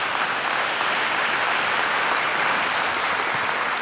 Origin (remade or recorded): recorded